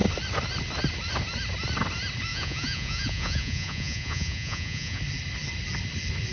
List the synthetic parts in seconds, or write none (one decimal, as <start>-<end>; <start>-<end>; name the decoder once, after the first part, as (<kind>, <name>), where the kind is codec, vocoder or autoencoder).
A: 2.3-5.0 (vocoder, Vocos)